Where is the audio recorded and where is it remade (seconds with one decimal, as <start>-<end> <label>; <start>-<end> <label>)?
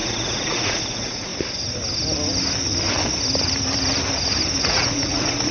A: 0.0-1.3 remade; 1.3-4.6 recorded; 4.6-5.5 remade